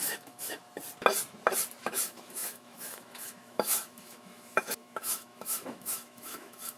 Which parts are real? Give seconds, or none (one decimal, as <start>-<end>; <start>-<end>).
0.6-1.8